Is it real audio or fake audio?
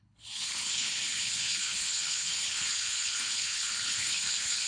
fake